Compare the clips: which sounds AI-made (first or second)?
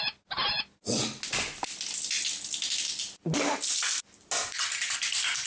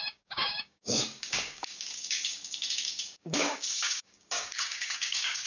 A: second